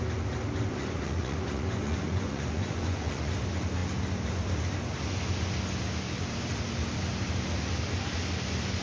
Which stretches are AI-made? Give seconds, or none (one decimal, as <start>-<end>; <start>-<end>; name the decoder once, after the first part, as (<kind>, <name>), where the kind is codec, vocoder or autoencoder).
0.7-3.3 (vocoder, Vocos)